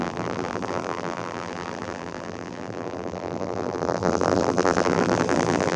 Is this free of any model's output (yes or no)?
no